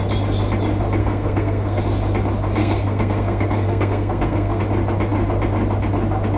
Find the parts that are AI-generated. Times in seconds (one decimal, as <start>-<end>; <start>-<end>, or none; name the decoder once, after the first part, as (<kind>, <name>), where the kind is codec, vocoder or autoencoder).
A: 1.0-1.8 (codec, SNAC); 2.6-4.6